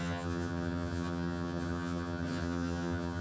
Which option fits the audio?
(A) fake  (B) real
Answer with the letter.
A